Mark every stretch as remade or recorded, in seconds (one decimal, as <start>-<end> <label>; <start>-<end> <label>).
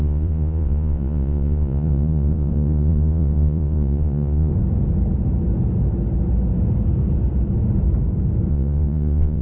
0.0-4.5 remade; 4.5-8.5 recorded; 8.5-9.4 remade